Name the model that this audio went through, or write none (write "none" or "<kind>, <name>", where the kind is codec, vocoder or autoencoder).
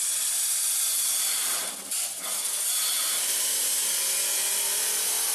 none